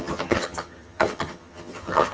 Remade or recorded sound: remade